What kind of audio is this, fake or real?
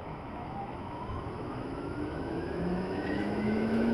fake